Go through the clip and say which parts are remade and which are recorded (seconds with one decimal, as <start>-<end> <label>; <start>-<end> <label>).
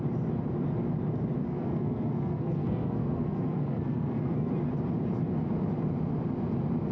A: 0.0-1.5 recorded; 1.5-4.5 remade; 4.5-6.9 recorded